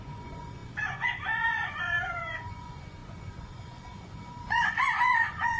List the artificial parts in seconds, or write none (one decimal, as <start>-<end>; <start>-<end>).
0.0-5.6